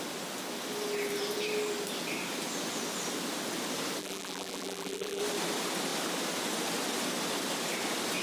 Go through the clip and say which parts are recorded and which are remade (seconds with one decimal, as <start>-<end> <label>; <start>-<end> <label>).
0.0-4.0 recorded; 4.0-5.2 remade; 5.2-8.2 recorded